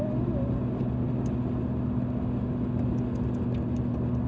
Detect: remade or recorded recorded